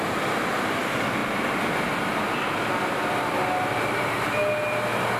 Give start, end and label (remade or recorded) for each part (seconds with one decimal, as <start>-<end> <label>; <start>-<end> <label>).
0.0-5.2 recorded